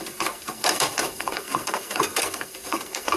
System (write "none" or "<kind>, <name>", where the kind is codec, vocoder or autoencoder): codec, SNAC